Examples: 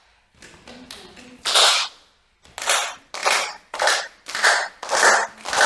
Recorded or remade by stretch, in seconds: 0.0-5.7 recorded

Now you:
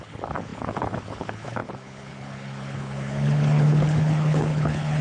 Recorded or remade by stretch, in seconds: 0.0-5.0 remade

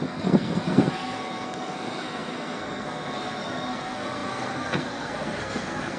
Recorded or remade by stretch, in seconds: 0.0-6.0 remade